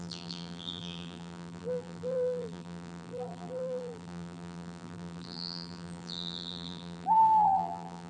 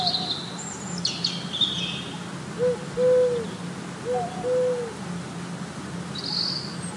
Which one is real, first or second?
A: second